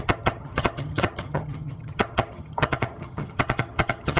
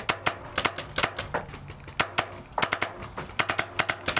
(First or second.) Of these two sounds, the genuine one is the second